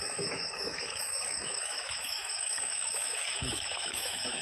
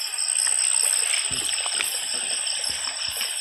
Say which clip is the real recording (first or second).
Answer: second